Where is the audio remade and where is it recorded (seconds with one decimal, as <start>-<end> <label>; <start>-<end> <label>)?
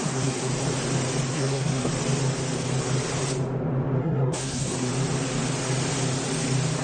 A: 0.0-0.5 remade; 0.5-1.3 recorded; 1.3-1.9 remade; 1.9-4.0 recorded; 4.0-4.9 remade; 4.9-6.8 recorded